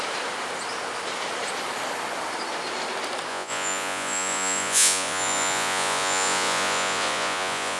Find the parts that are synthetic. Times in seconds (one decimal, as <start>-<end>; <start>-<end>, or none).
3.3-7.8